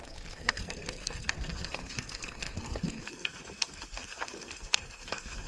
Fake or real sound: fake